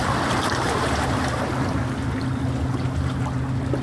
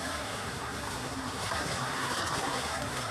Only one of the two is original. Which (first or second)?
first